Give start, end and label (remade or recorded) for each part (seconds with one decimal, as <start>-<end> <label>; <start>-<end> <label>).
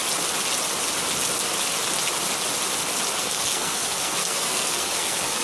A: 0.0-3.2 recorded; 3.2-5.4 remade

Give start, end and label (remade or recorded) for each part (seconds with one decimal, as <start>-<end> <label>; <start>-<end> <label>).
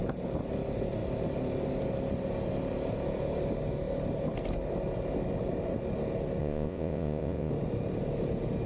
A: 0.0-6.4 recorded; 6.4-7.5 remade; 7.5-8.7 recorded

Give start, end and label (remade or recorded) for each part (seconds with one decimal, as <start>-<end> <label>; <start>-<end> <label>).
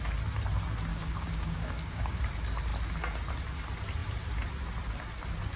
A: 0.0-0.9 recorded; 0.9-2.2 remade; 2.2-5.6 recorded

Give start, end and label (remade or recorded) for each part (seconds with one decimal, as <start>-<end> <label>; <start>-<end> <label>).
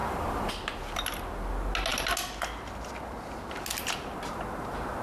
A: 0.0-0.5 remade; 0.5-5.0 recorded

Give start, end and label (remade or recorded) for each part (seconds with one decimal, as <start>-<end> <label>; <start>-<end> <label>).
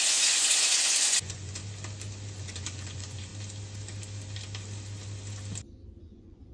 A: 0.0-1.6 remade; 1.6-2.4 recorded; 2.4-3.3 remade; 3.3-6.0 recorded; 6.0-6.5 remade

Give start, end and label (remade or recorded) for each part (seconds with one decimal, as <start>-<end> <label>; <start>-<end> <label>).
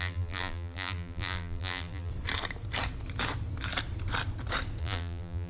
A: 0.0-2.1 remade; 2.1-4.8 recorded; 4.8-5.5 remade